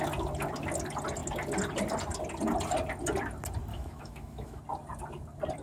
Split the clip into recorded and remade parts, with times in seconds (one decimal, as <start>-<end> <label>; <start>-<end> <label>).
0.0-3.7 recorded; 3.7-4.6 remade; 4.6-5.6 recorded